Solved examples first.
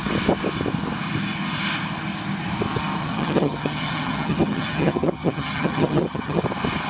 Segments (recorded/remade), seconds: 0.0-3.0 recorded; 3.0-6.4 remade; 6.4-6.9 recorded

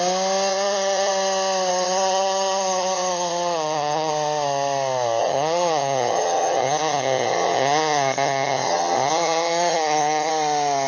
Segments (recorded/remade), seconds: 0.0-0.5 recorded; 0.5-1.1 remade; 1.1-1.7 recorded; 1.7-4.1 remade; 4.1-5.2 recorded; 5.2-10.3 remade; 10.3-10.9 recorded

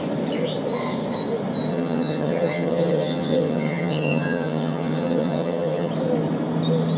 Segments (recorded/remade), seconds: 0.0-1.7 recorded; 1.7-5.9 remade; 5.9-7.0 recorded

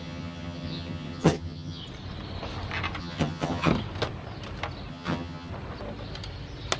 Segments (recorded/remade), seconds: 0.0-1.8 remade; 1.8-3.0 recorded; 3.0-3.7 remade; 3.7-4.9 recorded; 4.9-5.5 remade; 5.5-6.8 recorded